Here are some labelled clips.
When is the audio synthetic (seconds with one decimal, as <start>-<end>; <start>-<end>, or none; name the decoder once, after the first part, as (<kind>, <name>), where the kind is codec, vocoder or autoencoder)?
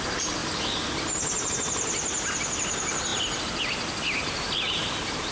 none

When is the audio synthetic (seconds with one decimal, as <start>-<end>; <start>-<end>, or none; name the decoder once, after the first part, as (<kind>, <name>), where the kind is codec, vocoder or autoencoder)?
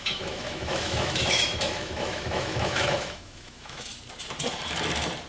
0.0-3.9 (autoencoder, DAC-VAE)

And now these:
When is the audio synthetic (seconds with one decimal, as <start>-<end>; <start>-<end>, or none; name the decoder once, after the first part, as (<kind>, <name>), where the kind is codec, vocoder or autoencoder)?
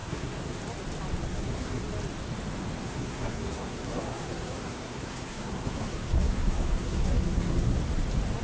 0.0-0.6 (codec, SNAC); 1.3-1.8; 2.8-7.8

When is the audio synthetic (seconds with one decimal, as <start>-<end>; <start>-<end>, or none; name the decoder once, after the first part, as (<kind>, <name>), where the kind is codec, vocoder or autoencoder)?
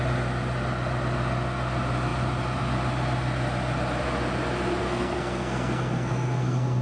4.8-6.8 (codec, SNAC)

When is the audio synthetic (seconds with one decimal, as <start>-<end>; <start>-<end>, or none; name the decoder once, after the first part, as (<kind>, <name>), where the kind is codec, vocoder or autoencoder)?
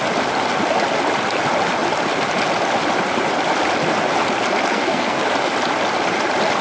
4.7-5.2 (codec, SNAC)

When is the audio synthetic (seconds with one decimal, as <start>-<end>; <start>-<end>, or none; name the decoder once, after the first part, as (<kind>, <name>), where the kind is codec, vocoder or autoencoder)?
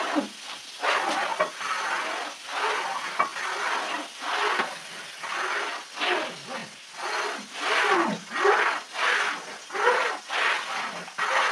none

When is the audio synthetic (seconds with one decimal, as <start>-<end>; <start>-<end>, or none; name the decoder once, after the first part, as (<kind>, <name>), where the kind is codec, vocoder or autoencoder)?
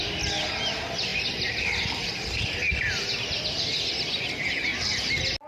none